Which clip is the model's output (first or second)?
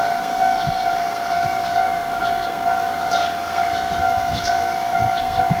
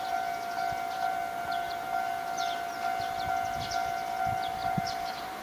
first